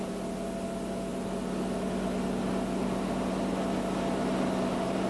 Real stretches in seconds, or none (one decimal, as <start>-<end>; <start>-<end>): 0.0-5.1